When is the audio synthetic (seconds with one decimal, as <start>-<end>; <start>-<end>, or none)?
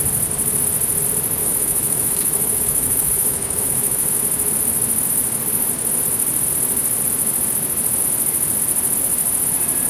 1.4-4.2